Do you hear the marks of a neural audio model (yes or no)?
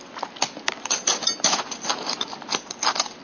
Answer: no